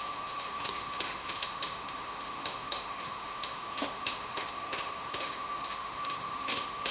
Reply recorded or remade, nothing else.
remade